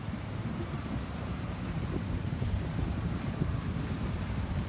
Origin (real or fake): fake